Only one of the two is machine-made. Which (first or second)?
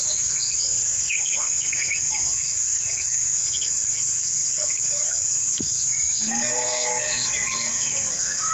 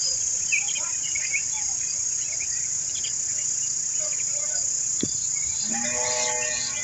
first